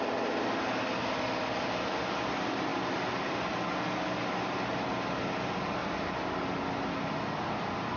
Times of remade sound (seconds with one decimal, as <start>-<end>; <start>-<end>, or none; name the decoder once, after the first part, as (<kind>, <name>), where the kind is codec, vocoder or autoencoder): none